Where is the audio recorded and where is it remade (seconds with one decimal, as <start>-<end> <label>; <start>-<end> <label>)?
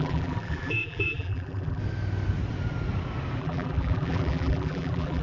0.0-1.8 remade; 1.8-3.4 recorded; 3.4-5.2 remade